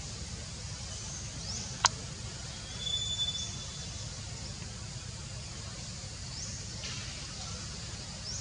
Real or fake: real